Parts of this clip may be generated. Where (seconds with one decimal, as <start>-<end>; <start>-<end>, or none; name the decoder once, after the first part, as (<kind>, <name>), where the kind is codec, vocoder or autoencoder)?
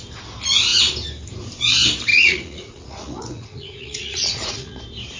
2.1-4.8 (vocoder, Vocos)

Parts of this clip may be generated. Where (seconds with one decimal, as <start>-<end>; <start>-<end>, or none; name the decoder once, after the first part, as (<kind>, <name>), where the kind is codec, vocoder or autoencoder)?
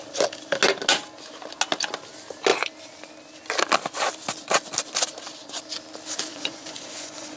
6.3-7.4 (vocoder, Vocos)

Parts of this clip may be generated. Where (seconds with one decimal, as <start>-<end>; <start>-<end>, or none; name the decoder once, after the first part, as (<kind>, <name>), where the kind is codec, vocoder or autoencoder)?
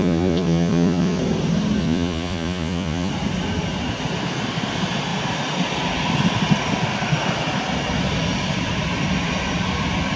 0.0-1.2 (vocoder, Vocos); 1.8-3.1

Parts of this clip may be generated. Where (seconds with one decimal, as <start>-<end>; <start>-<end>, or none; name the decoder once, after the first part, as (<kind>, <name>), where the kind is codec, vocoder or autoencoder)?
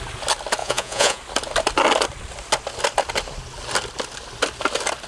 0.6-1.2 (vocoder, Vocos)